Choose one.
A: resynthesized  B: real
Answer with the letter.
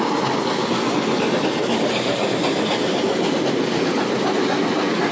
B